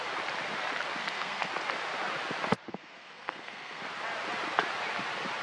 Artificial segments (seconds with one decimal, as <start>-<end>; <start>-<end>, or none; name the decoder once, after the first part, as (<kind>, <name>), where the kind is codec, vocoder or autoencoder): 1.0-1.5 (codec, SNAC); 2.7-3.8